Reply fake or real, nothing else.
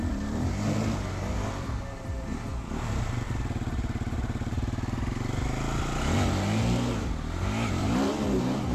real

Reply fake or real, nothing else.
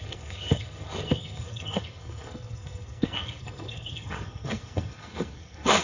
fake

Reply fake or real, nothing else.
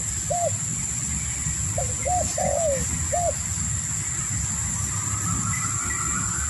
real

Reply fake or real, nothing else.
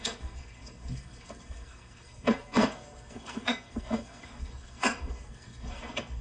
fake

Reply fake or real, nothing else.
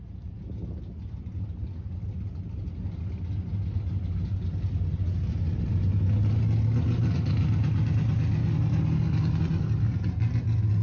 real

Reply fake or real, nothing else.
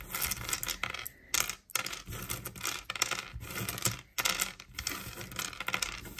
real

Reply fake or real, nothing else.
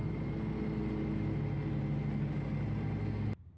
real